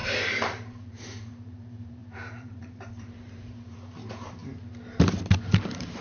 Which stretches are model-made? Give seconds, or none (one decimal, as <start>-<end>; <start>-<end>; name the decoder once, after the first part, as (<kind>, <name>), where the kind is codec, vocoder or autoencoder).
0.0-4.4 (vocoder, BigVGAN v2); 5.3-6.0